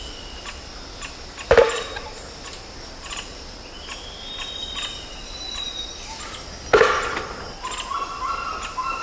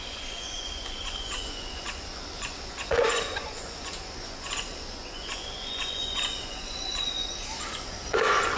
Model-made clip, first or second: second